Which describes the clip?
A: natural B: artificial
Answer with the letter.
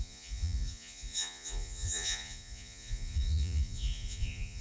B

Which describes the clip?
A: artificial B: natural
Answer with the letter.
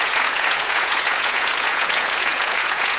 A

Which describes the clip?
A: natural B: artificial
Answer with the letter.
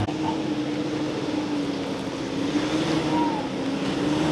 A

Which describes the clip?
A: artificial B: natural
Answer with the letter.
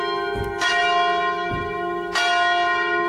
B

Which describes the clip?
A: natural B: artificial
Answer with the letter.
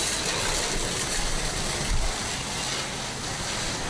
A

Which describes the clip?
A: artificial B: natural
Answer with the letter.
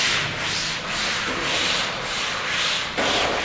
B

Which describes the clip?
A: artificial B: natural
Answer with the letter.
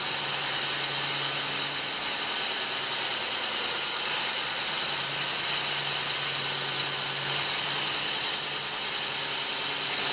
B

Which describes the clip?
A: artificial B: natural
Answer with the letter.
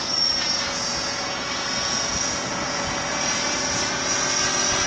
A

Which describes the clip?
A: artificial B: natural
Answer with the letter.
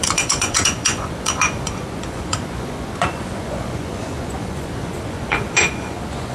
A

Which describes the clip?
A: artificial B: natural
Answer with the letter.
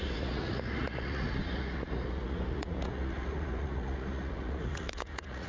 A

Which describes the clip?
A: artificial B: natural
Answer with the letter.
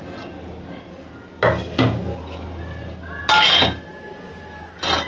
B